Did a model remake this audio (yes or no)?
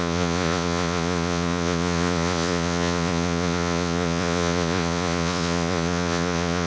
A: yes